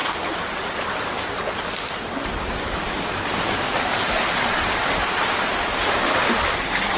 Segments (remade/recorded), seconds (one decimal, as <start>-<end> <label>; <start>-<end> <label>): 0.0-0.6 remade; 0.6-7.0 recorded